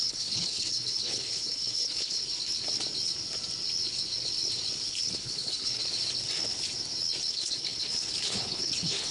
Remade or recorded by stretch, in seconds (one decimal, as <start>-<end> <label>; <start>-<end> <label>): 0.0-2.2 remade; 2.2-5.1 recorded; 5.1-5.8 remade; 5.8-7.3 recorded; 7.3-9.1 remade